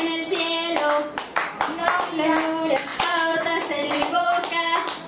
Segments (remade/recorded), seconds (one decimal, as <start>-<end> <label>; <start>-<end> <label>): 0.0-2.9 recorded; 2.9-4.3 remade; 4.3-5.1 recorded